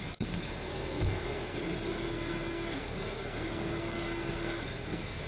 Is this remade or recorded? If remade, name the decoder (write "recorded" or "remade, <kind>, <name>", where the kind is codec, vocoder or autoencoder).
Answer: remade, codec, SNAC